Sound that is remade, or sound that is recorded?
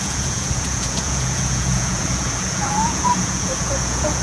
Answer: remade